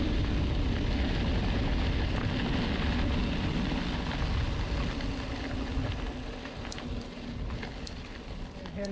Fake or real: real